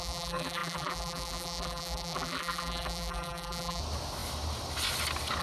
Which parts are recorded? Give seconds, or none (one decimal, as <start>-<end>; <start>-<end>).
3.8-5.4